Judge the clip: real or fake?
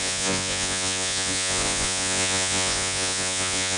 fake